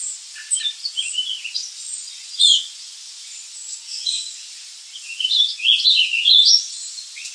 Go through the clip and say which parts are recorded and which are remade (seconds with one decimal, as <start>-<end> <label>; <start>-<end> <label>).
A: 0.0-1.6 recorded; 1.6-4.6 remade; 4.6-5.1 recorded; 5.1-7.3 remade